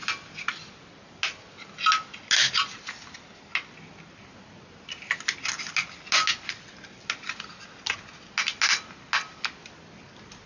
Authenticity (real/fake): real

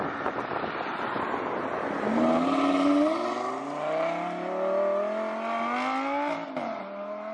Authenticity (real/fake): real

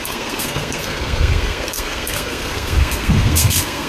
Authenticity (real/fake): fake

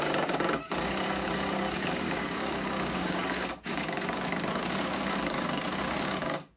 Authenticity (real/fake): fake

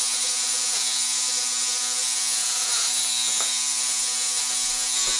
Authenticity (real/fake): fake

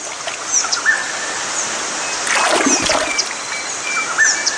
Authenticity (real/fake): real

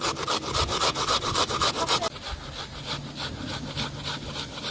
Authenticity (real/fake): real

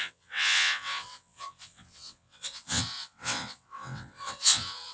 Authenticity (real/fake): fake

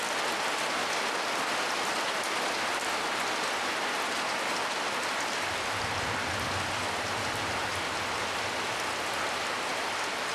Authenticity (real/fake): real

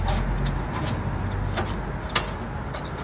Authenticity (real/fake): real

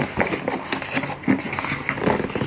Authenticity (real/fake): real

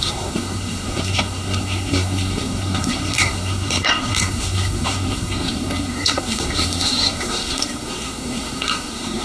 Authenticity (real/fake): fake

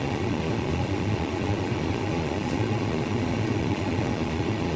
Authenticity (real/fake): fake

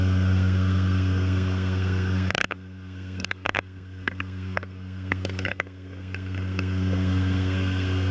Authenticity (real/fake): fake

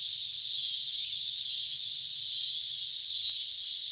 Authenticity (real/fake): real